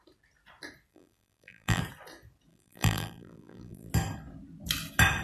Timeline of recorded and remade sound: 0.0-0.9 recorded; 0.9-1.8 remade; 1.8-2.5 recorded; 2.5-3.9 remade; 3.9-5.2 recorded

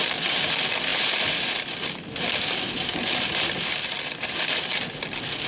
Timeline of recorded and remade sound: 0.0-5.5 recorded

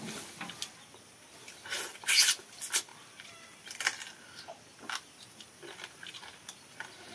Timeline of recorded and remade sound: 0.0-7.1 recorded

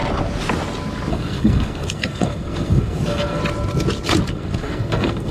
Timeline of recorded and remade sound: 0.0-1.1 recorded; 1.1-3.4 remade; 3.4-4.3 recorded; 4.3-5.3 remade